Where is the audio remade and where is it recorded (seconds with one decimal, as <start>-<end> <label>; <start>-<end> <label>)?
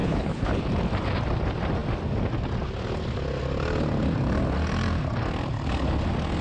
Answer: 0.0-0.6 remade; 0.6-6.4 recorded